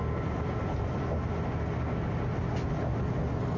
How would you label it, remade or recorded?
recorded